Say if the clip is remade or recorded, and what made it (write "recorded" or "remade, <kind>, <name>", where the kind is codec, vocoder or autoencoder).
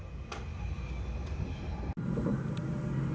recorded